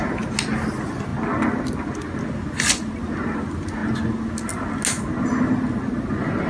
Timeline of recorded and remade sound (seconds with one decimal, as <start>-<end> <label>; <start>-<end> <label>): 0.0-6.5 recorded